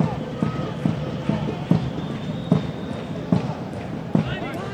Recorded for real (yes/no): yes